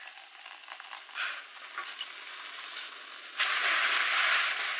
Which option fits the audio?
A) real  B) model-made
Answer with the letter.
A